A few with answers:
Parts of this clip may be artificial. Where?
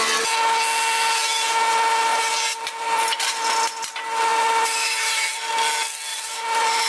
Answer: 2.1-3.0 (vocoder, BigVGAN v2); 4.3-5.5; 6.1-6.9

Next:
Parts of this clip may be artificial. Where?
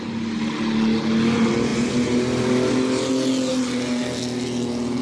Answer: none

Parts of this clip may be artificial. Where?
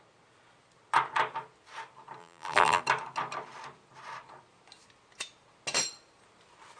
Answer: 2.2-2.8 (vocoder, BigVGAN v2)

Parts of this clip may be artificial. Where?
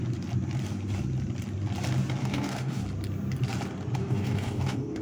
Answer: 2.2-2.8 (codec, DAC); 4.0-5.0